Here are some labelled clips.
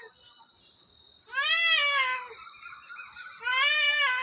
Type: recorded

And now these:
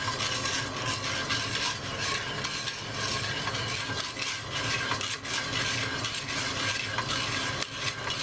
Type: recorded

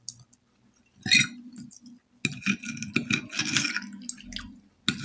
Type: recorded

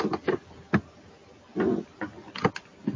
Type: recorded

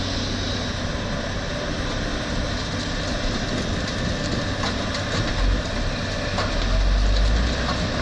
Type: recorded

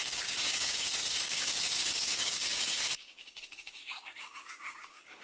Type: remade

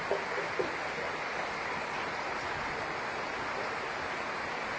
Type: recorded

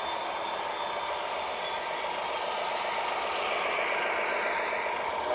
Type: recorded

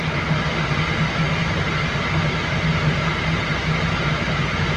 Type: recorded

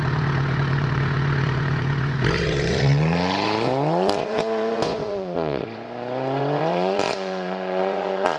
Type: remade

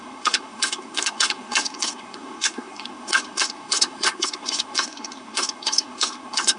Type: remade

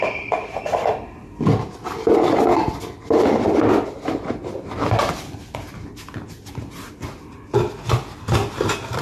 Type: recorded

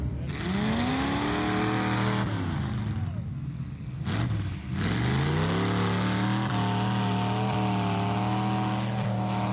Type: recorded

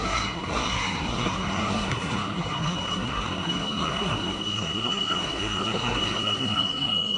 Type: remade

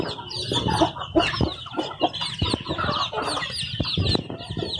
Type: recorded